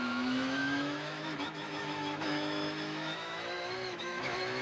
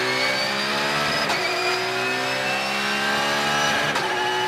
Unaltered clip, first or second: second